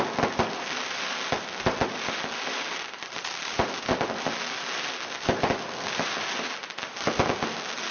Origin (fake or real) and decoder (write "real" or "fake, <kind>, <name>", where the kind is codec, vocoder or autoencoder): real